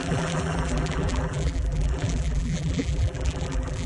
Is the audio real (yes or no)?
no